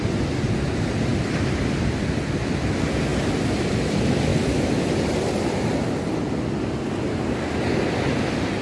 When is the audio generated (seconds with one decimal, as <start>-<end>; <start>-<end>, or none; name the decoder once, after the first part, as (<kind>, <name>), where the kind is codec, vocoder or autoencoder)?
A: none